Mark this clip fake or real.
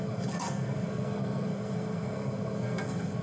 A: fake